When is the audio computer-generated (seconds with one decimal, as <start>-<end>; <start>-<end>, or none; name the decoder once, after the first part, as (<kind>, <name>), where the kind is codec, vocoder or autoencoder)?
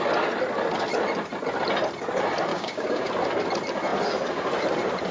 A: 2.5-3.1 (codec, DAC)